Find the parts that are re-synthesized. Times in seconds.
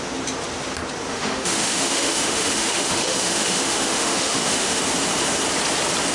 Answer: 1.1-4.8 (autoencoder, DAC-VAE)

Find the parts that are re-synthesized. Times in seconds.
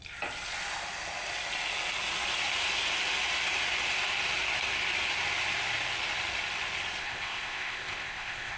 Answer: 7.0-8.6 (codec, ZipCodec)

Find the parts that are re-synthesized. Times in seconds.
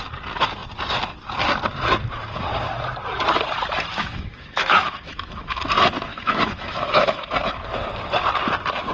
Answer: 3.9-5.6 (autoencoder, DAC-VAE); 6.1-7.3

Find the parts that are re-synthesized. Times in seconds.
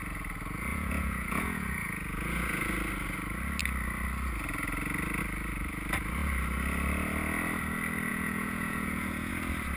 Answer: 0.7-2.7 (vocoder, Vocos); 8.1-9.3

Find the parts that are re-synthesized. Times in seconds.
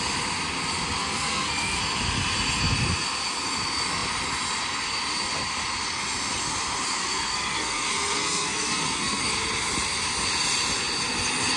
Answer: 1.0-1.8 (codec, SNAC); 7.0-9.2